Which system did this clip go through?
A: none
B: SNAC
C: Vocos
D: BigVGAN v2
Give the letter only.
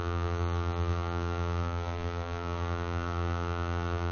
D